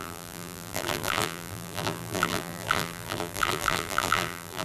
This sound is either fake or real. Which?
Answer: fake